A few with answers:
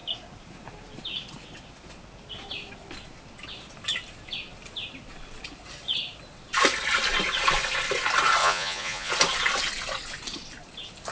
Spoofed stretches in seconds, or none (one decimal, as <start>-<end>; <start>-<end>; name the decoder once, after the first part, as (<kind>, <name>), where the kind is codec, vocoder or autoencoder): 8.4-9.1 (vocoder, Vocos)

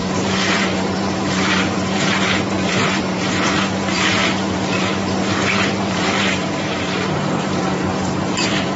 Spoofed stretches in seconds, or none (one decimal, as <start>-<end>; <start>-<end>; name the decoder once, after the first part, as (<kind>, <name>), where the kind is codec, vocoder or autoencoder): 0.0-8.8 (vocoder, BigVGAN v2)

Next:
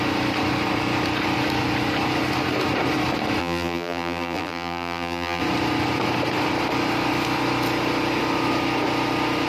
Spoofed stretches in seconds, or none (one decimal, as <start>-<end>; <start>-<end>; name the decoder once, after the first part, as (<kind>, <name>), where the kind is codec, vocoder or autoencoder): 3.4-5.4 (vocoder, BigVGAN v2)

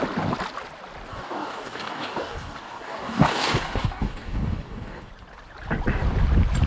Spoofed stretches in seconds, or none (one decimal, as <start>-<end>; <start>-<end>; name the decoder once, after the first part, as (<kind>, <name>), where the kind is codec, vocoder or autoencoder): 1.1-5.1 (codec, DAC)

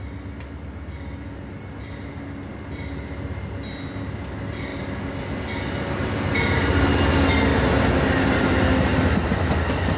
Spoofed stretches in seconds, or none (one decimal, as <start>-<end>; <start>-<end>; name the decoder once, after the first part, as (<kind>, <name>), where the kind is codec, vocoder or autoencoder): none

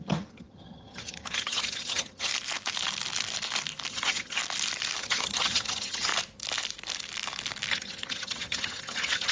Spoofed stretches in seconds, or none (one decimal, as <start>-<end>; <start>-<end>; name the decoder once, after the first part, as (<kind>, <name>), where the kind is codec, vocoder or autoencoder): 0.0-2.3 (vocoder, HiFi-GAN); 3.9-4.4; 5.0-6.1; 7.7-9.3

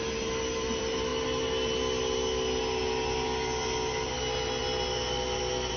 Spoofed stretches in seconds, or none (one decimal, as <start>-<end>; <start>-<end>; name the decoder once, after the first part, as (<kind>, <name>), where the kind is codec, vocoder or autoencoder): none